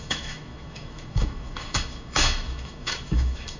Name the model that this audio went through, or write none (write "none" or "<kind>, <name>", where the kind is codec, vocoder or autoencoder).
autoencoder, DAC-VAE